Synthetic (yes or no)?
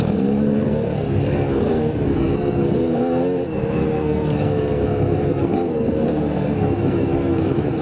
yes